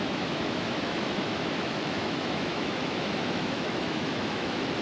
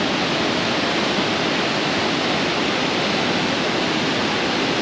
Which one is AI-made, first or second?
first